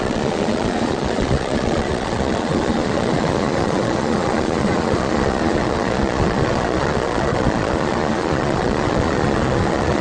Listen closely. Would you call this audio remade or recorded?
remade